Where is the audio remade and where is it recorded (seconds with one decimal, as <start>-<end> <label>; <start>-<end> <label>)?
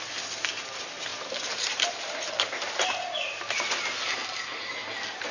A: 0.0-1.1 recorded; 1.1-3.7 remade; 3.7-5.3 recorded